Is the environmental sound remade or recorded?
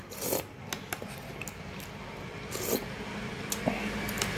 recorded